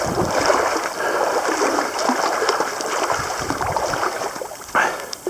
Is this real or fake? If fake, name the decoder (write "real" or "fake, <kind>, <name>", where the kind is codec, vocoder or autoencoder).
fake, vocoder, BigVGAN v2